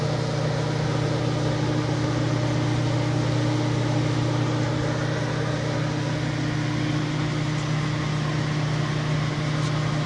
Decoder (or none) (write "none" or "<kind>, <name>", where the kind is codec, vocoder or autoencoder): none